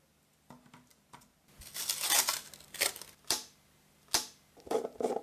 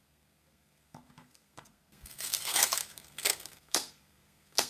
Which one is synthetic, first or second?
second